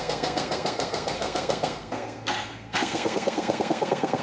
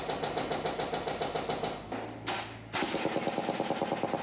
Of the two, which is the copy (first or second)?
first